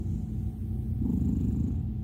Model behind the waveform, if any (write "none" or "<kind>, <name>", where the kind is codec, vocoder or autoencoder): vocoder, Vocos